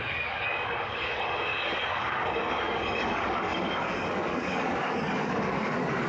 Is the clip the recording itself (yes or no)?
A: no